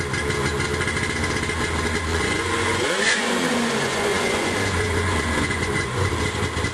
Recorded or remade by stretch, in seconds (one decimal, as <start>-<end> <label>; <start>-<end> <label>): 0.0-2.1 recorded; 2.1-6.1 remade; 6.1-6.7 recorded